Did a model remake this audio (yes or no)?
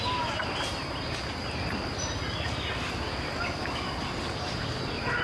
no